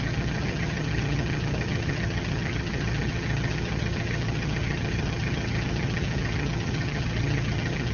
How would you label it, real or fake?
fake